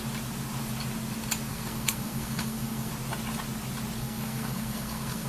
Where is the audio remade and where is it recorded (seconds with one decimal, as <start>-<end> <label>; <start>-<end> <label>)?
0.0-1.5 recorded; 1.5-2.9 remade; 2.9-4.0 recorded; 4.0-5.3 remade